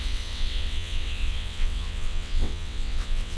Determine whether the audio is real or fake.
fake